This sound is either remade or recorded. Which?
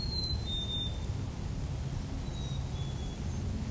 recorded